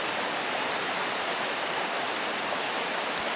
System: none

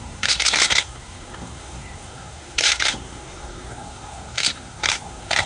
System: codec, SNAC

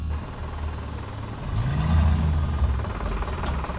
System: none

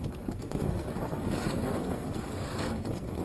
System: codec, SNAC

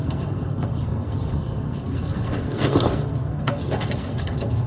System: codec, SNAC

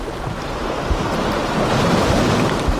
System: none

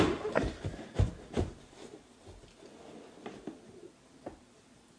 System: none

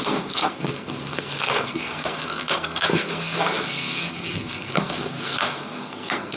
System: codec, SNAC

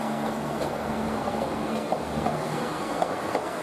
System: codec, SNAC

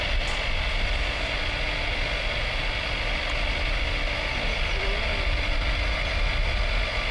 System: none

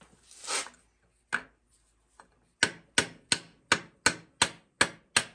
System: none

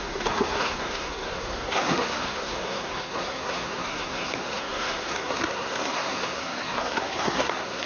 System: codec, SNAC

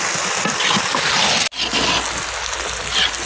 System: none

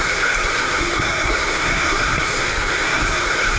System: codec, SNAC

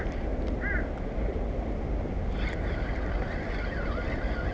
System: none